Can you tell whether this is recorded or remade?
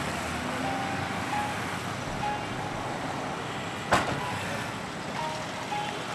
recorded